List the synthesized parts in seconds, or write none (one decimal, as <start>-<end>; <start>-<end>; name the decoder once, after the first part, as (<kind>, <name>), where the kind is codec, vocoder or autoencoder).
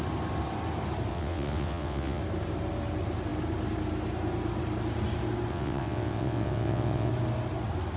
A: 1.1-2.2 (vocoder, WaveNeXt); 5.5-7.1